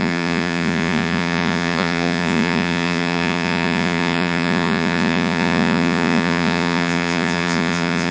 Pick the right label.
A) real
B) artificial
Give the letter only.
B